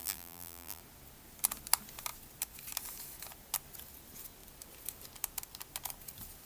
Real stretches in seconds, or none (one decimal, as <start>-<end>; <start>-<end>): 0.8-6.5

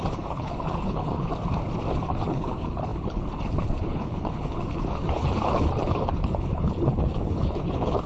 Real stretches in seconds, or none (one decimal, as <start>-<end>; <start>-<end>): 1.3-1.9

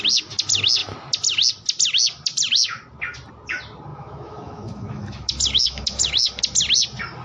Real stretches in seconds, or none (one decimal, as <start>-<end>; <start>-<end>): 0.0-3.9; 6.4-7.2

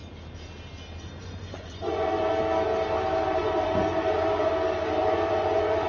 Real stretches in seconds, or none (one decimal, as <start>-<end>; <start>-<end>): 0.0-1.2; 2.3-3.4; 4.5-5.0

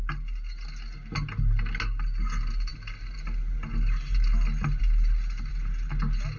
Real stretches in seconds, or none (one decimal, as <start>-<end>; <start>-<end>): 0.0-6.4

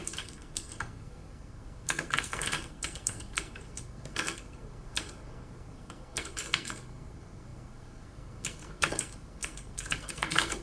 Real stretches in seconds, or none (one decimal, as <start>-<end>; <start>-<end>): none